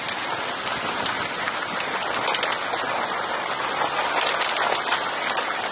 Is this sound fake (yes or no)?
no